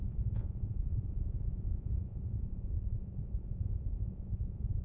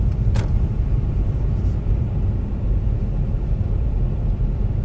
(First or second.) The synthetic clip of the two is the first